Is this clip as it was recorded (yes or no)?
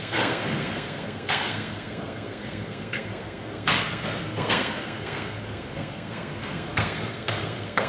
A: no